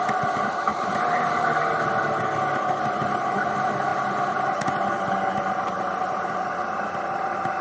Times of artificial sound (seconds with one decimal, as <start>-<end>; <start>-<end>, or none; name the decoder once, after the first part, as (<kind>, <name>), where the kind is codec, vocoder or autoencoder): 0.7-1.6 (vocoder, BigVGAN v2); 3.0-3.5